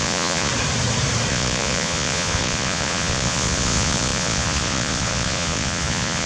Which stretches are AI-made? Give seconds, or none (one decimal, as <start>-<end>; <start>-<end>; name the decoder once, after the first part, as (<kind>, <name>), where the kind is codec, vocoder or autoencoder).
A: 0.0-0.5 (vocoder, Vocos); 1.3-6.3